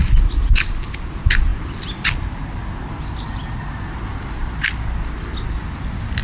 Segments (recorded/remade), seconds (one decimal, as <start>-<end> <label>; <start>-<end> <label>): 0.0-6.2 recorded